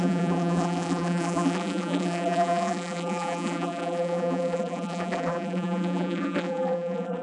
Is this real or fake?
fake